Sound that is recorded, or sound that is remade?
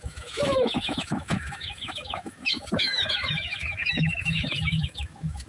remade